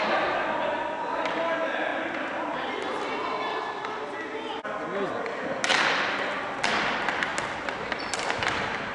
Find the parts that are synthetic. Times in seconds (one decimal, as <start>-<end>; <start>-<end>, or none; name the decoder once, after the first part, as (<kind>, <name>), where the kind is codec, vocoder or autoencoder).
none